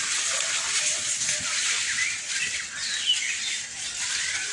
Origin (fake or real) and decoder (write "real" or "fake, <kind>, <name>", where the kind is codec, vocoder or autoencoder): real